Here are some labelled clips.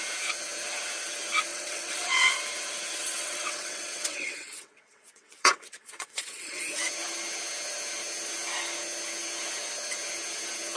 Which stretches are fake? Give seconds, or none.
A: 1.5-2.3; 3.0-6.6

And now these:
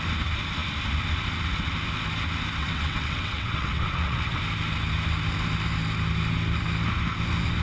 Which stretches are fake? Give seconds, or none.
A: 2.6-4.4

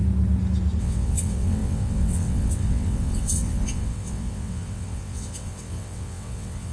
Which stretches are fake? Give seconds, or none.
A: 0.8-6.7